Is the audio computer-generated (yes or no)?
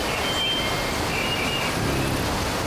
no